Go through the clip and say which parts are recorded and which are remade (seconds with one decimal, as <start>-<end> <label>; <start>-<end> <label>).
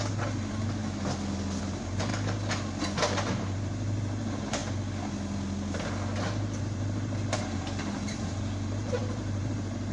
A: 0.0-0.8 remade; 0.8-1.6 recorded; 1.6-2.1 remade; 2.1-2.8 recorded; 2.8-4.6 remade; 4.6-6.6 recorded; 6.6-9.9 remade